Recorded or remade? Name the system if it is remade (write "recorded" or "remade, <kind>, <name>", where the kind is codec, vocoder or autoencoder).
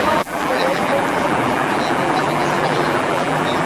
remade, vocoder, BigVGAN v2